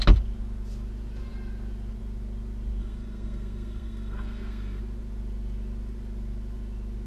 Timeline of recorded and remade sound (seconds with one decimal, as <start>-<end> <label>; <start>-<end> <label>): 0.0-2.8 recorded; 2.8-4.8 remade; 4.8-7.1 recorded